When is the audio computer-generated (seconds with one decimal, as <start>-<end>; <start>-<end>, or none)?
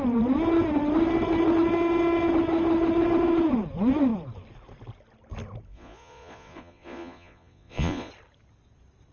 5.7-8.1